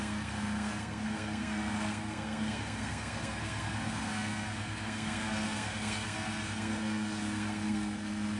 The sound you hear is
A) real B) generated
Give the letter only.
B